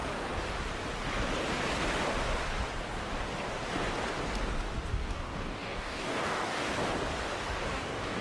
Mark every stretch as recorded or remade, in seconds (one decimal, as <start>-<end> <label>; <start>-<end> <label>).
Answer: 0.0-4.9 recorded; 4.9-6.7 remade; 6.7-7.5 recorded; 7.5-8.2 remade